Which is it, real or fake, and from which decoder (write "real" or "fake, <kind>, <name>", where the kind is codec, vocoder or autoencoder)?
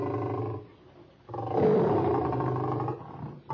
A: real